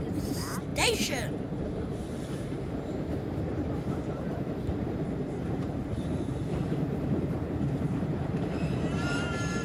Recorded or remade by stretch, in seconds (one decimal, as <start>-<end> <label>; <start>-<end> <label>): 0.0-9.6 remade